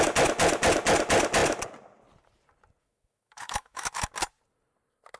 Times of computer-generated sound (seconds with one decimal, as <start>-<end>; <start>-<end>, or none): 2.8-4.1